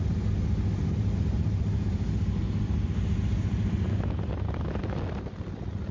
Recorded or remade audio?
recorded